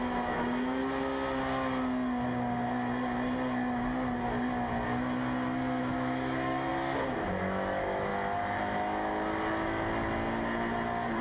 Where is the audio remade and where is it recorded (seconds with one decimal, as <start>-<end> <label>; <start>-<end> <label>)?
0.0-0.8 remade; 0.8-5.8 recorded; 5.8-6.7 remade; 6.7-7.4 recorded; 7.4-8.1 remade; 8.1-11.2 recorded